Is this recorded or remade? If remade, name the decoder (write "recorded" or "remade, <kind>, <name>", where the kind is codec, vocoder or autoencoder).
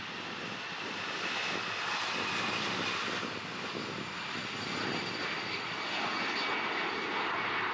recorded